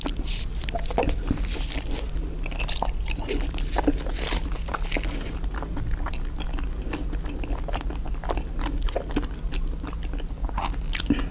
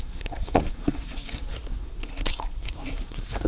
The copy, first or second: second